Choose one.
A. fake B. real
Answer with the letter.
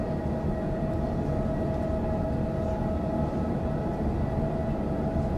B